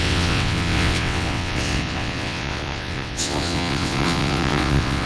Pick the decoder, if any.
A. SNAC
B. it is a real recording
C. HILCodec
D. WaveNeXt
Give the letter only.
D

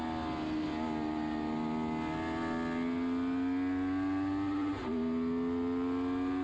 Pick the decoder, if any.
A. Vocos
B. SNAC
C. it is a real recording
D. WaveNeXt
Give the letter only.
C